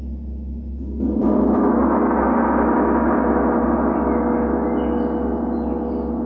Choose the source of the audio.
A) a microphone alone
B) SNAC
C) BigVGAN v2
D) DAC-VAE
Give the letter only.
A